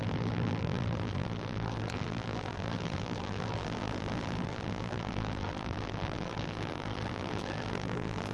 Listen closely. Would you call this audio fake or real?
fake